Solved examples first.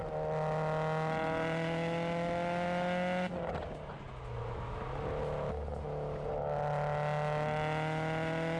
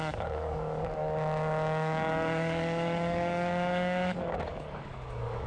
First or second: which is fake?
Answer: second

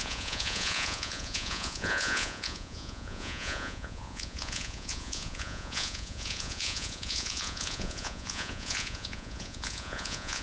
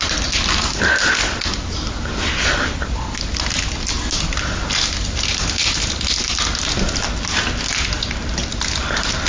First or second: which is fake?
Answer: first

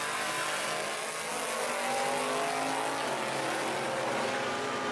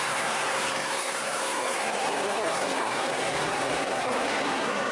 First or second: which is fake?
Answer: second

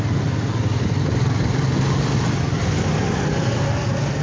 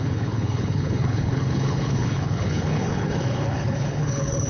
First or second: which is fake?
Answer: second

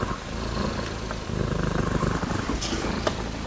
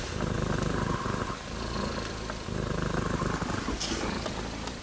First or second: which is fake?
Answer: first